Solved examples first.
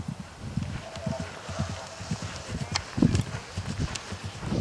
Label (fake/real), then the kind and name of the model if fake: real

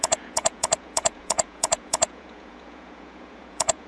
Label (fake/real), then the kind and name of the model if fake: fake, vocoder, Vocos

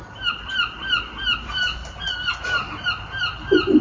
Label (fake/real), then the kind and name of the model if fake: real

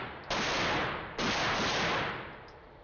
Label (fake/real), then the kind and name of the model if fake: real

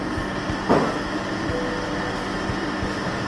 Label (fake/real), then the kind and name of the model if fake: real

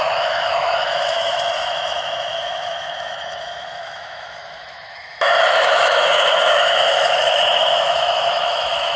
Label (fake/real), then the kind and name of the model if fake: fake, autoencoder, DAC-VAE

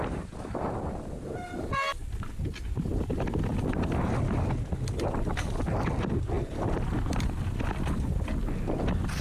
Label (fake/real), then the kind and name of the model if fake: real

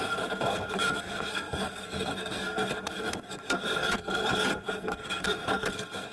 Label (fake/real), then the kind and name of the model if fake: fake, codec, SNAC